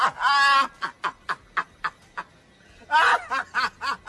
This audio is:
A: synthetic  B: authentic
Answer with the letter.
B